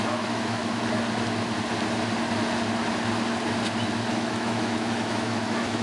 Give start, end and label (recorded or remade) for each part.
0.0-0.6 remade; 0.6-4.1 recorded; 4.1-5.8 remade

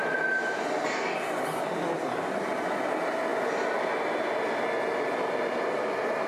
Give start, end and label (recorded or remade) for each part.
0.0-6.3 recorded